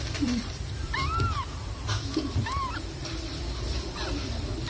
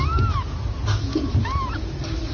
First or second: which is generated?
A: first